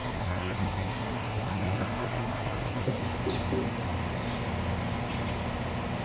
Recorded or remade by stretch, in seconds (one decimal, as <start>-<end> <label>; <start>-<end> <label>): 0.0-3.0 remade; 3.0-6.0 recorded